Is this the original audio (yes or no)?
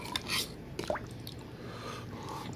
yes